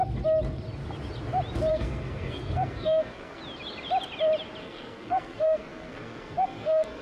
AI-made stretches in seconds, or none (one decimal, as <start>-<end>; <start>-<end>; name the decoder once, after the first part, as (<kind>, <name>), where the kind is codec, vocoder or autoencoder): 1.7-3.4 (codec, SNAC); 4.6-7.0